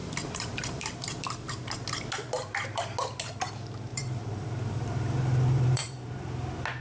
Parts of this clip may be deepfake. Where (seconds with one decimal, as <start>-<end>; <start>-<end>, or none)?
0.0-1.5; 3.9-6.1